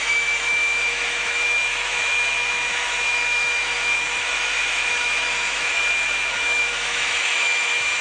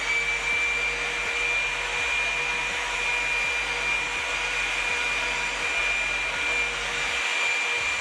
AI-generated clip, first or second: first